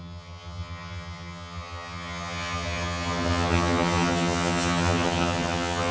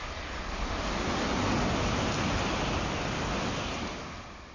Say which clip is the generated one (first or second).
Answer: first